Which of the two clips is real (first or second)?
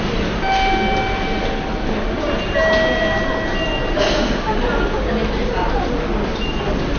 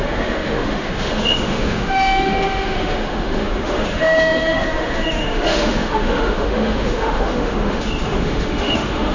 first